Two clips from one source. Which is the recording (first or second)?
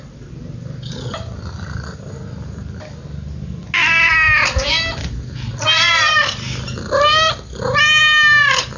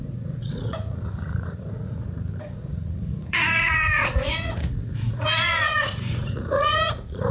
first